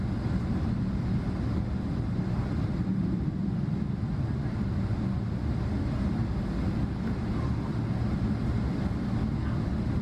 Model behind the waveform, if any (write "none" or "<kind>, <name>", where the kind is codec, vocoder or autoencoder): none